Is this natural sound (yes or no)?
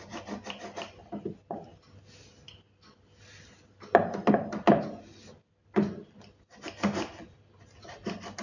yes